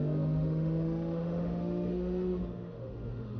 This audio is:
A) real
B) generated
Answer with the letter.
B